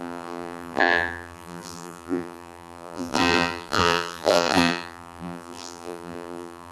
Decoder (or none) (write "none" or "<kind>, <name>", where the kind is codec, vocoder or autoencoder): vocoder, BigVGAN v2